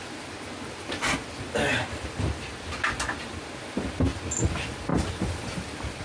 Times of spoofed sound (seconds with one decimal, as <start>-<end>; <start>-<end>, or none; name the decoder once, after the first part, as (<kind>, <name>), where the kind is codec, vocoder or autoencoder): 1.7-2.2 (vocoder, BigVGAN v2); 4.9-6.0